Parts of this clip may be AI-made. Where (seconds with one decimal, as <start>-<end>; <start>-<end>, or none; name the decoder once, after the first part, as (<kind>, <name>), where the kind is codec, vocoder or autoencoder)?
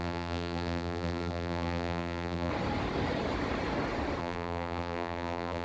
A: 0.0-2.5 (vocoder, BigVGAN v2); 4.2-5.6